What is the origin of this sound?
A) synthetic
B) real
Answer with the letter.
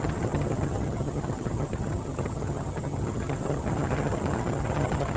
A